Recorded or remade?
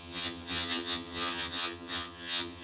remade